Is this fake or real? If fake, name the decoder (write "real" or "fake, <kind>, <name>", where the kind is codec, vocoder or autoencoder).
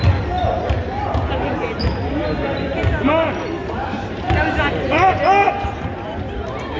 real